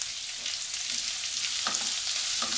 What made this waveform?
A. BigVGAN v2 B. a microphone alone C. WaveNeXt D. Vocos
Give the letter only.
B